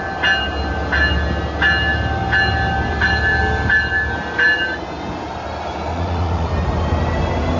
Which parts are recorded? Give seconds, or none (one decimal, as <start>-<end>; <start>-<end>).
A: 0.0-5.9; 6.5-7.6